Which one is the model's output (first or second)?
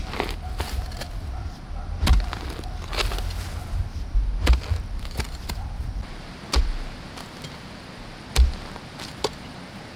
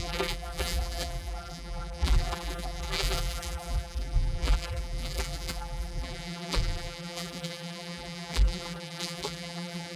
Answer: second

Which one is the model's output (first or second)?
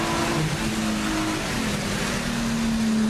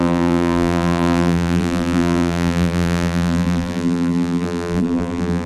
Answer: second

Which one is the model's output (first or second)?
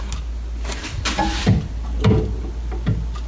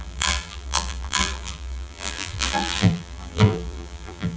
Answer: second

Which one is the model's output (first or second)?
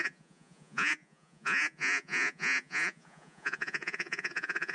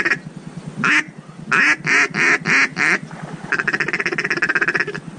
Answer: first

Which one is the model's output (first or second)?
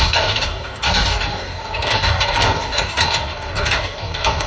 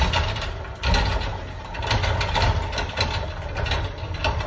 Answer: first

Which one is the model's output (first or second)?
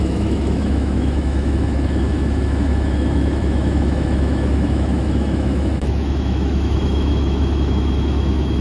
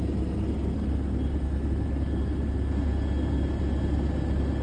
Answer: first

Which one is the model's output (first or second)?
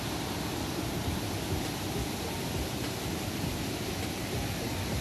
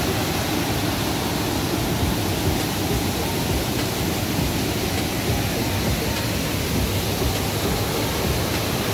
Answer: first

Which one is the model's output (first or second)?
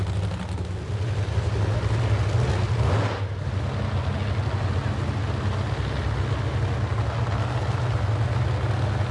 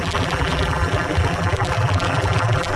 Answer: second